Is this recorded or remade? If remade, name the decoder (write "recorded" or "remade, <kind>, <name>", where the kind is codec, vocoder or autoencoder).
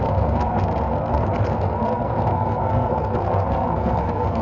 remade, codec, SNAC